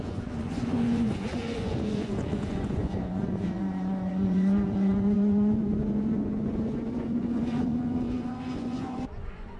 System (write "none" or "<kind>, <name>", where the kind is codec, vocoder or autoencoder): vocoder, Vocos